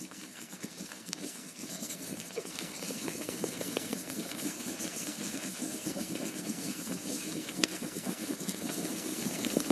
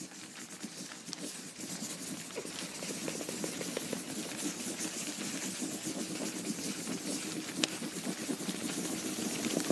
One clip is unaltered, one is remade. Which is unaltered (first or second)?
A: second